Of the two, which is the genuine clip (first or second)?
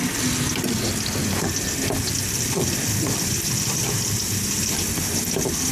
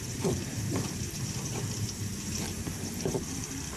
first